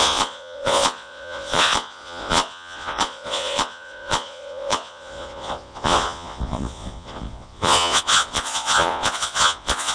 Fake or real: fake